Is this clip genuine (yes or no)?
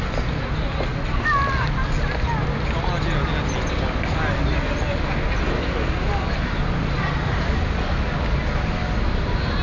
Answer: yes